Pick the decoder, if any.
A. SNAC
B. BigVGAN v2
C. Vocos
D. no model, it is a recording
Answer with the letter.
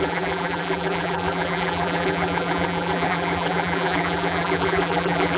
B